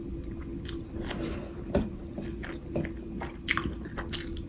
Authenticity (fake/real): real